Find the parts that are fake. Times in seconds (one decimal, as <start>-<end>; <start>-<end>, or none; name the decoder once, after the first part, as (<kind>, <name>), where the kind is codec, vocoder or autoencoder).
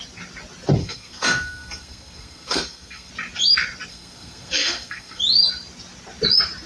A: 0.8-3.1 (codec, SNAC); 3.9-5.2